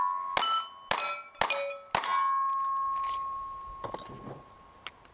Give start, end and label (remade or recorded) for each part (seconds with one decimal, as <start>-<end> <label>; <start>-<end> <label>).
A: 0.0-5.1 recorded